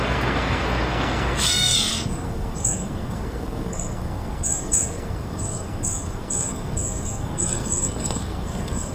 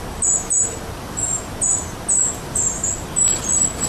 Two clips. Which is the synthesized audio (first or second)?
first